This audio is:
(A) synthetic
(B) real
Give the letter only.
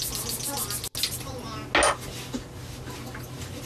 B